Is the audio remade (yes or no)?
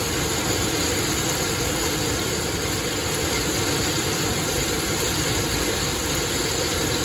no